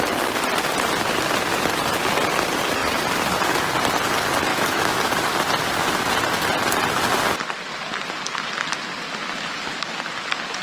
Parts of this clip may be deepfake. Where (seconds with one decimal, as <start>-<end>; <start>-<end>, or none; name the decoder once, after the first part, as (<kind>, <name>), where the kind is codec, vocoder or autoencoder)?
4.5-5.1 (autoencoder, DAC-VAE)